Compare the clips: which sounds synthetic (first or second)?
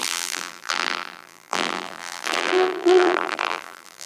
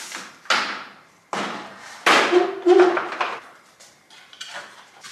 first